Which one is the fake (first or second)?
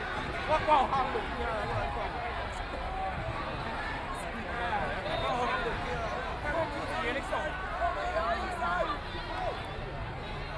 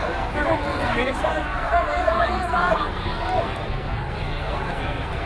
second